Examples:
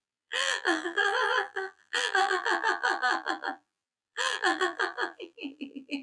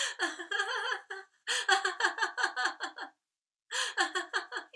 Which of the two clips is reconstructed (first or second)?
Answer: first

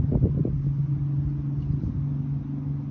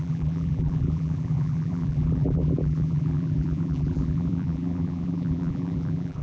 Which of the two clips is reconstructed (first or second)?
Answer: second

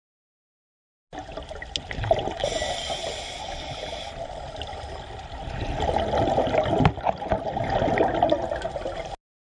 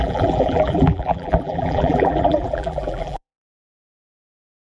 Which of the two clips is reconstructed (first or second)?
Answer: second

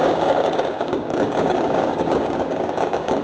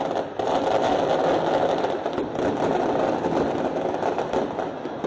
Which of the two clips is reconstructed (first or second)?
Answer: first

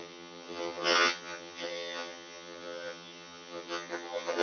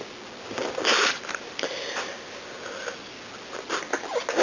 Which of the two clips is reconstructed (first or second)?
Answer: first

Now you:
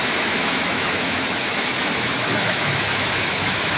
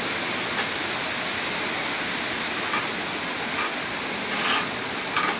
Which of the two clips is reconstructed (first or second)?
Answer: first